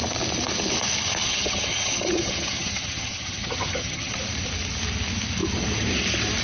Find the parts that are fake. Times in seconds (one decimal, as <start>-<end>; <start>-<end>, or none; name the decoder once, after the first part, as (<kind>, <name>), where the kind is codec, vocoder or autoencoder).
1.2-4.2 (vocoder, HiFi-GAN)